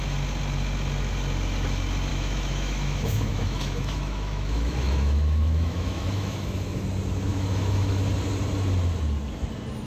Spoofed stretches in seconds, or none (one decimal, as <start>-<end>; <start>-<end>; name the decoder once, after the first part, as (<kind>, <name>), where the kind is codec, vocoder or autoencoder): 2.1-6.8 (autoencoder, DAC-VAE); 7.3-8.0